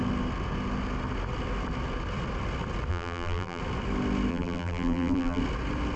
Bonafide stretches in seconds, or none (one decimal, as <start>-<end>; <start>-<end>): 0.0-2.9; 3.6-4.3; 5.4-6.0